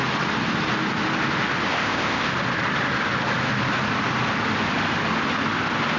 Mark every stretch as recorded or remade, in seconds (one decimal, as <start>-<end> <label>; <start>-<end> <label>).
0.0-1.7 recorded; 1.7-2.3 remade; 2.3-6.0 recorded

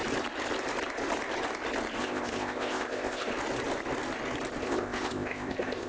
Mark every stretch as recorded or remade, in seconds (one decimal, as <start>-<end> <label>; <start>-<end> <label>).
0.0-2.0 recorded; 2.0-3.3 remade; 3.3-4.6 recorded; 4.6-5.9 remade

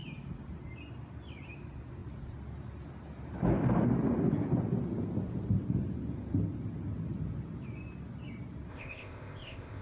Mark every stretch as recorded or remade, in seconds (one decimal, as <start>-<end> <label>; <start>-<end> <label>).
0.0-8.7 recorded; 8.7-9.8 remade

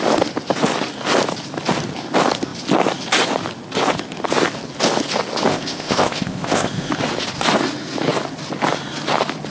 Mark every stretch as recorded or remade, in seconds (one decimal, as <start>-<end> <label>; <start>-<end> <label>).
0.0-5.5 recorded; 5.5-6.9 remade; 6.9-9.5 recorded

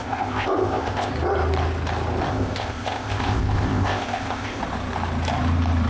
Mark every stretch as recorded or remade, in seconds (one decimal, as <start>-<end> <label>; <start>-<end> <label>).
0.0-1.1 remade; 1.1-2.3 recorded; 2.3-4.6 remade; 4.6-5.9 recorded